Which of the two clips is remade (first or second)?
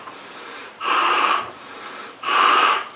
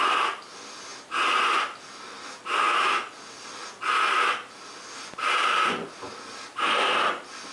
first